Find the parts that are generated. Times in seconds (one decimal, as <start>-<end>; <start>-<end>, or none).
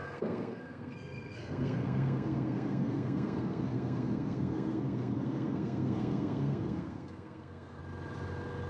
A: 0.0-7.8